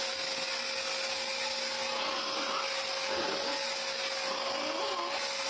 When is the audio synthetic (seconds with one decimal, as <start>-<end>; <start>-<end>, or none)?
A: none